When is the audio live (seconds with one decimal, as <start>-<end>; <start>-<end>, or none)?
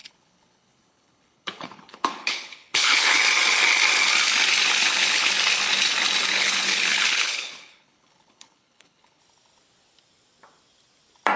3.2-4.8; 5.3-6.3; 9.2-11.4